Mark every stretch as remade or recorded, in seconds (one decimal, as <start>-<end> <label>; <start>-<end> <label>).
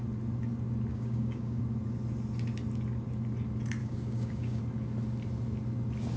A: 0.0-0.9 recorded; 0.9-1.6 remade; 1.6-3.8 recorded; 3.8-4.6 remade; 4.6-6.2 recorded